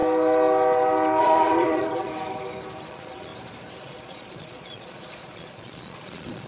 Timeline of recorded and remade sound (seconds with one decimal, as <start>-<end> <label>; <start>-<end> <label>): 0.0-1.2 recorded; 1.2-2.1 remade; 2.1-2.9 recorded; 2.9-3.3 remade; 3.3-3.8 recorded; 3.8-6.5 remade